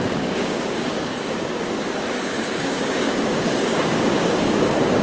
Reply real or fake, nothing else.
fake